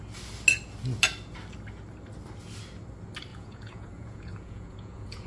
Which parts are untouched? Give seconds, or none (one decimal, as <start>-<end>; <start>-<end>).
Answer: 0.0-3.3